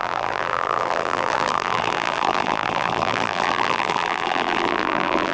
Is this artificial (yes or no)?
yes